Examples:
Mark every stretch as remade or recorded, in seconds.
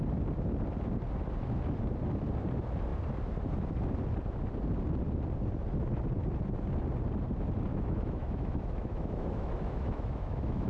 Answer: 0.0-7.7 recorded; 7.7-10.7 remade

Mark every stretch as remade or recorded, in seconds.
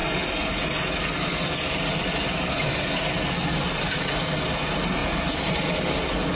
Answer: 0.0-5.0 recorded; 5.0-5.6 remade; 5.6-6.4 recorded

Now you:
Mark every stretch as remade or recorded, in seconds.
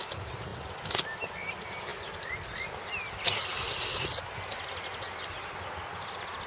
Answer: 0.0-6.5 recorded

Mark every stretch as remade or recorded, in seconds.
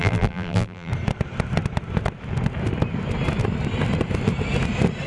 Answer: 0.0-0.9 remade; 0.9-5.1 recorded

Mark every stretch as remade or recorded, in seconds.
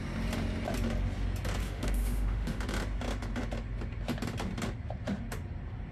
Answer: 0.0-1.6 recorded; 1.6-2.6 remade; 2.6-5.9 recorded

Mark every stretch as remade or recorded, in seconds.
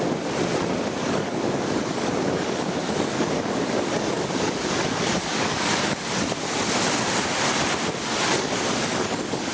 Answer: 0.0-1.0 recorded; 1.0-6.1 remade; 6.1-8.3 recorded; 8.3-9.5 remade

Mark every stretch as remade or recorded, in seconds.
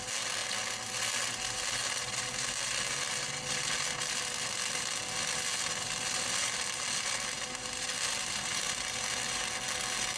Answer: 0.0-10.2 recorded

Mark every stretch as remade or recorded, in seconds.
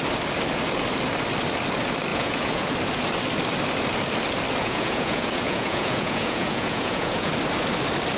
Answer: 0.0-2.1 recorded; 2.1-2.7 remade; 2.7-4.6 recorded; 4.6-7.3 remade; 7.3-8.2 recorded